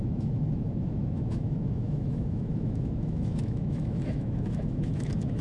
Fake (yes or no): yes